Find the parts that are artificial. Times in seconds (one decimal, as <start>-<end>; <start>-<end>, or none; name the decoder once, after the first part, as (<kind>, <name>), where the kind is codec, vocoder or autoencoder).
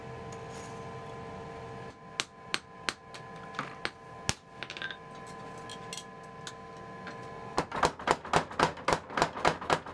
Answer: none